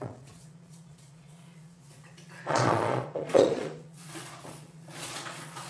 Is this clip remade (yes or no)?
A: yes